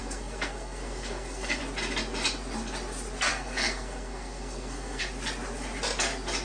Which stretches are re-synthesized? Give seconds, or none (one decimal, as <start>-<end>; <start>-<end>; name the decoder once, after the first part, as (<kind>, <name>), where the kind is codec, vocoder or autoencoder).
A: 0.0-1.6 (codec, SNAC); 3.3-5.0

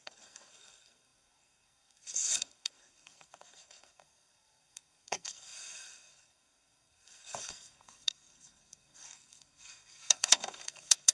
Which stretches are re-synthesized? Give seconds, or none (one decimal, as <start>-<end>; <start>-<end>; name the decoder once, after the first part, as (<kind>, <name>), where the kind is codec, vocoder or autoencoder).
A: 0.0-11.1 (codec, SNAC)

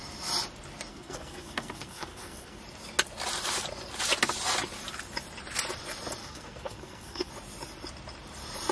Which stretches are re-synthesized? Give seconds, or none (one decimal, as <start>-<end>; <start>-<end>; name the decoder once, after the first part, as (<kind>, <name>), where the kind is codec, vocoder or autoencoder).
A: 0.9-2.6 (codec, SNAC); 6.2-7.3

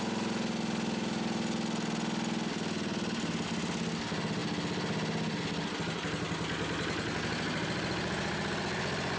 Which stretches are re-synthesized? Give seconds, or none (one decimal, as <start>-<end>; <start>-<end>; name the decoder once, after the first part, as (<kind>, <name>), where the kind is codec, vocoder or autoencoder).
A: none

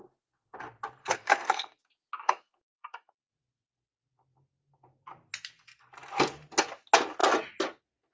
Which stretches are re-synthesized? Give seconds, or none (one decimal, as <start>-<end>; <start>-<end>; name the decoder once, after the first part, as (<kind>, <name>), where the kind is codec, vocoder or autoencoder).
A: 1.0-1.8 (codec, SNAC); 2.2-3.3

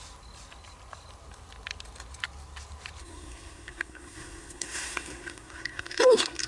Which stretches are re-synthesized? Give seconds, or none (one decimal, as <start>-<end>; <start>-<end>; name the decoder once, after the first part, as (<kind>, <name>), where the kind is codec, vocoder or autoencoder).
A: 3.0-6.5 (codec, SNAC)

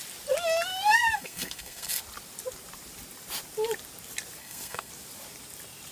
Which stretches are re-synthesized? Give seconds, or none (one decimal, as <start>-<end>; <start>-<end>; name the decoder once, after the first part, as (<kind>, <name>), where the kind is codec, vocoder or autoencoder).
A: 0.9-2.0 (codec, SNAC); 4.4-4.9